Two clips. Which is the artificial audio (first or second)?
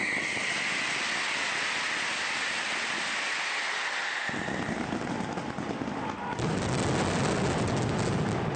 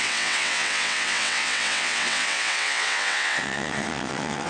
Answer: second